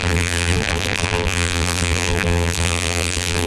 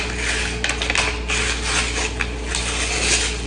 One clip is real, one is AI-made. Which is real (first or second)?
second